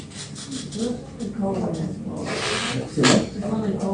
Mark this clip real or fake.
real